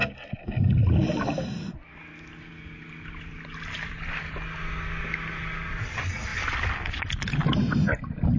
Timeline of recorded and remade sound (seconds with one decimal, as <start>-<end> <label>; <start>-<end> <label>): 0.0-8.4 recorded